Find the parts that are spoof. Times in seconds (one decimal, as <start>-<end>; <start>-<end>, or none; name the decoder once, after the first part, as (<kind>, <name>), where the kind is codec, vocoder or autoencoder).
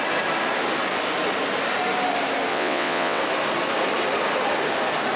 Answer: 2.5-3.2 (vocoder, WaveNeXt)